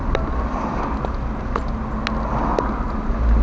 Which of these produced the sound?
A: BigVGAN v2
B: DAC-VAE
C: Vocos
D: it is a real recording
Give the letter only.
D